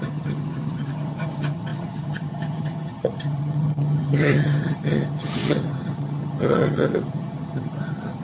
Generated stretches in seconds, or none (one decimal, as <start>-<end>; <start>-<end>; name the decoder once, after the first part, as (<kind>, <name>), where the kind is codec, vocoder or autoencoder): 0.0-8.2 (vocoder, HiFi-GAN)

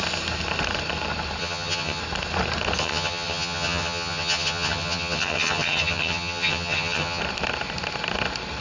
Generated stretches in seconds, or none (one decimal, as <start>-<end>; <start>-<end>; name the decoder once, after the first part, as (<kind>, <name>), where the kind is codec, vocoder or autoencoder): 1.4-2.0 (vocoder, HiFi-GAN); 2.8-7.2

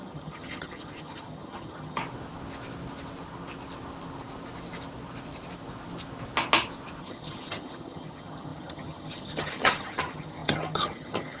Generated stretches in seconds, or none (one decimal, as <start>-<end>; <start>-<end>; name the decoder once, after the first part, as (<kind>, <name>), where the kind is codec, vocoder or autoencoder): 0.0-2.0 (vocoder, HiFi-GAN); 7.0-11.4

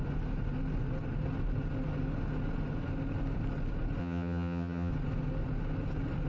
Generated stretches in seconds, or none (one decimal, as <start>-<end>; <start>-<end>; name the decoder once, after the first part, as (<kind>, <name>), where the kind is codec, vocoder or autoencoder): 4.0-4.9 (vocoder, HiFi-GAN)

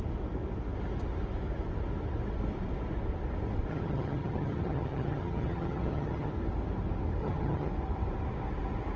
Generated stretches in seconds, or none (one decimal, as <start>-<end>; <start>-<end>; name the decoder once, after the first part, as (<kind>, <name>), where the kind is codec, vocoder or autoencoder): 3.7-6.3 (vocoder, HiFi-GAN); 7.2-7.7

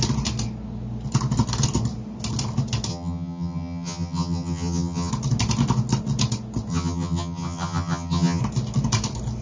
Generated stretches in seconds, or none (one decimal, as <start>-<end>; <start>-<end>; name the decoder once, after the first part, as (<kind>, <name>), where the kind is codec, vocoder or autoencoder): 2.9-5.1 (vocoder, HiFi-GAN); 6.7-8.4